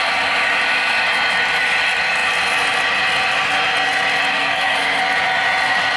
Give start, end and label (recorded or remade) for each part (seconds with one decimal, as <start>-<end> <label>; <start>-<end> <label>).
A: 0.0-4.3 recorded; 4.3-5.0 remade; 5.0-6.0 recorded